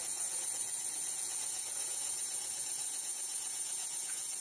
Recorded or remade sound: remade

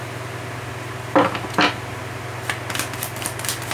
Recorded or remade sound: recorded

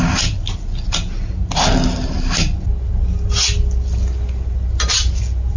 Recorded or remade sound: recorded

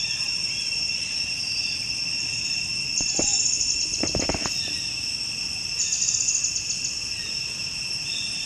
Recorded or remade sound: recorded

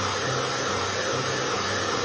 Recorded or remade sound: recorded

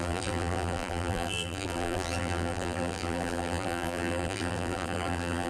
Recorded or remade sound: remade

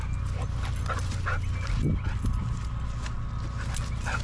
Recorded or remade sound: recorded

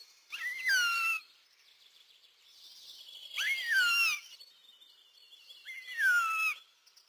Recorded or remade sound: recorded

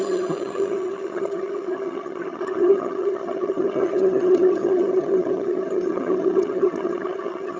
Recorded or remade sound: remade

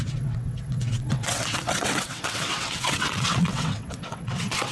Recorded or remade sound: remade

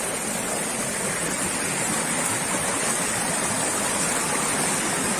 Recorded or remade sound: recorded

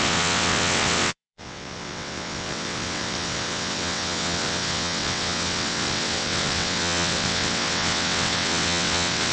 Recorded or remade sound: remade